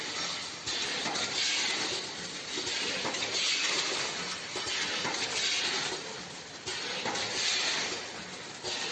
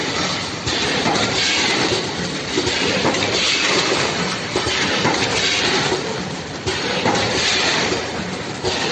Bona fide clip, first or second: first